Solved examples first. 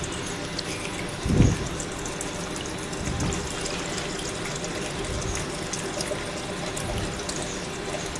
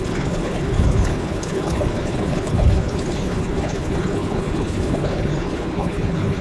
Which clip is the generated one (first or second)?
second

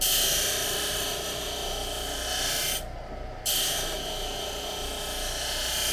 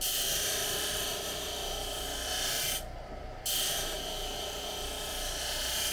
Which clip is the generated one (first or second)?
second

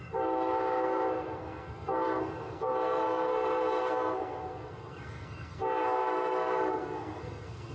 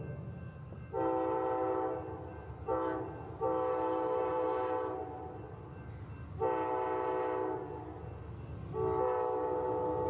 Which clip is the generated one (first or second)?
first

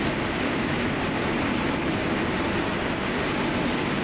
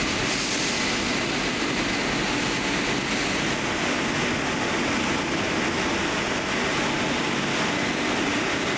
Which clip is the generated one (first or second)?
first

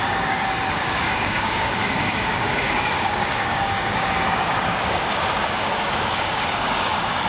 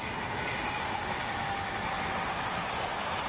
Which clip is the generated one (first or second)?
first